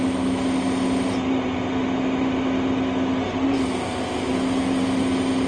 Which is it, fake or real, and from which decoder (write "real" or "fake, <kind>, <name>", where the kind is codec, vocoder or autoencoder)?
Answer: real